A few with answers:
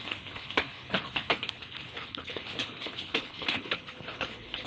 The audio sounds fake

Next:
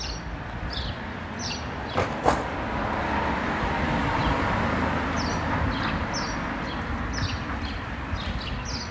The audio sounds real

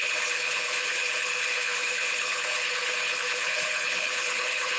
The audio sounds fake